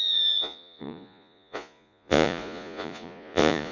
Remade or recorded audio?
remade